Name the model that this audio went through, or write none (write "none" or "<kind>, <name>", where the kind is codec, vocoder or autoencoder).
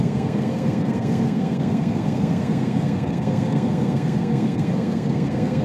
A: codec, SNAC